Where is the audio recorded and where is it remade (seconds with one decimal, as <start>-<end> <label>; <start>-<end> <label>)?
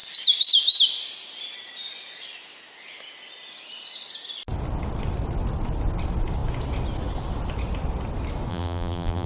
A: 0.0-8.5 recorded; 8.5-9.3 remade